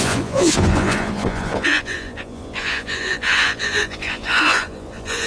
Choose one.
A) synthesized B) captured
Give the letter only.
A